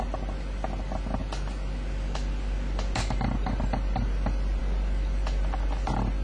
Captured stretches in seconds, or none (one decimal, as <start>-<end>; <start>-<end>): 0.0-6.2